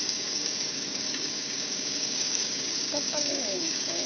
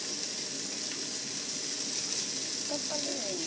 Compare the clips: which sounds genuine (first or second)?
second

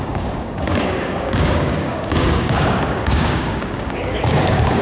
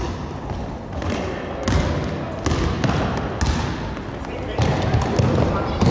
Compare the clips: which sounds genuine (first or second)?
second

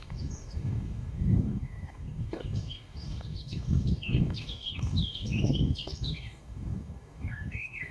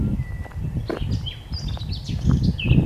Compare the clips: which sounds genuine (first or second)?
second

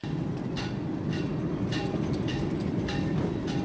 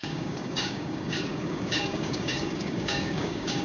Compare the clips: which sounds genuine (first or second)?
first